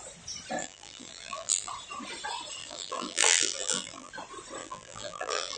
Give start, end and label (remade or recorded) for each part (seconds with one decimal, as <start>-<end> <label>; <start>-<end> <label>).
0.0-0.6 recorded; 0.6-1.7 remade; 1.7-2.6 recorded; 2.6-4.1 remade; 4.1-4.6 recorded; 4.6-5.6 remade